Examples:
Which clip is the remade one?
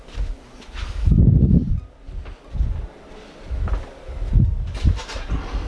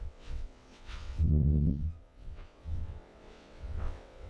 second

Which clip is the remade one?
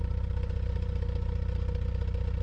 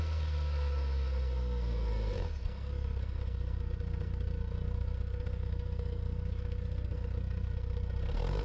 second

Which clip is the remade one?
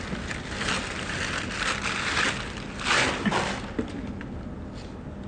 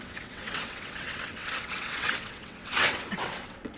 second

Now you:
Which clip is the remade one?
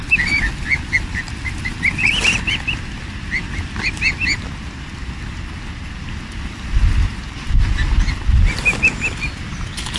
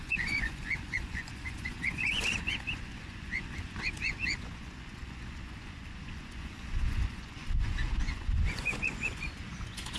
second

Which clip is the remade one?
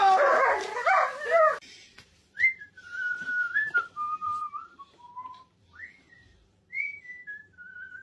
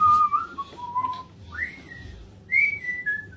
first